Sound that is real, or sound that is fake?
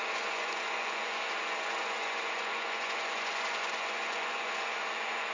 fake